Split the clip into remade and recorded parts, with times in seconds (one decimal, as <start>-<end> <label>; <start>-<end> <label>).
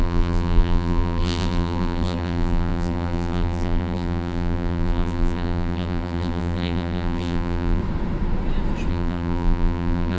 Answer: 0.0-7.8 remade; 7.8-8.9 recorded; 8.9-10.2 remade